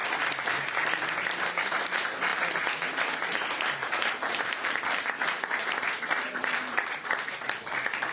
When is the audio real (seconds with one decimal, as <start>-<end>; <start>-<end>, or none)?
0.0-0.6

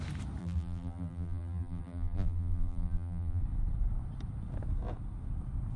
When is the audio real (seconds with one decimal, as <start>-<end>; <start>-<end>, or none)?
0.0-0.4; 3.4-5.8

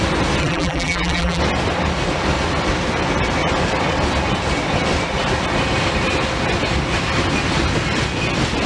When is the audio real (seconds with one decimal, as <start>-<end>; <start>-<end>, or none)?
0.0-0.4; 1.4-8.7

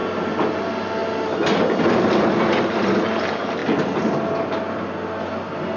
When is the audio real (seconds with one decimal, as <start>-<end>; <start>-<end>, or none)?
0.0-5.8

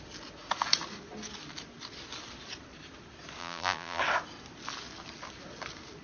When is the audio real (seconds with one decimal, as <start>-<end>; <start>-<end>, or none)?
0.0-3.4; 4.0-6.0

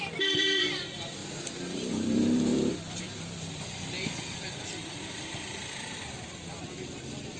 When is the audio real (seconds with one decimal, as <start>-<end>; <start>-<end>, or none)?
1.2-1.9

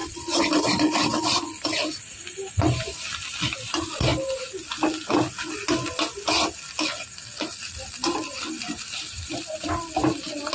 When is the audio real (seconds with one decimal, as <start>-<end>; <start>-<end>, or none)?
4.1-7.0

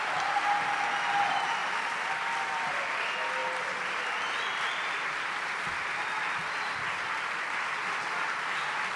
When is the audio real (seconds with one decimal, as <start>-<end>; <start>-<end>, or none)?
0.0-1.6; 2.7-3.4; 4.7-9.0